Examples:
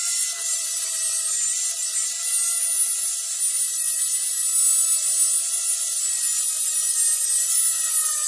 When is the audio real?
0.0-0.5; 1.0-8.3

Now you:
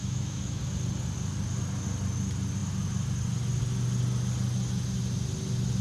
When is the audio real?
0.6-5.8

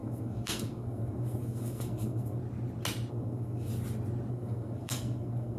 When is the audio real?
2.4-3.1; 3.7-4.3

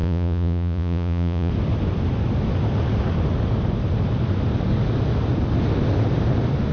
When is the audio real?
1.5-6.7

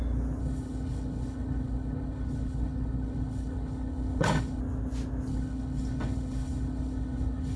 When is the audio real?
0.0-0.4; 4.6-5.3

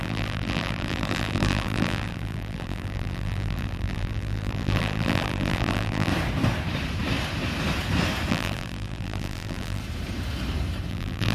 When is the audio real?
6.1-8.3; 9.8-10.9

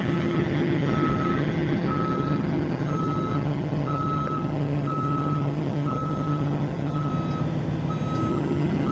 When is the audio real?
7.1-8.3